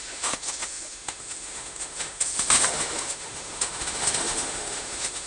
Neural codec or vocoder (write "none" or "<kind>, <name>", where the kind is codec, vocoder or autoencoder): autoencoder, DAC-VAE